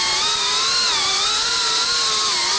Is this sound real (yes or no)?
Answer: yes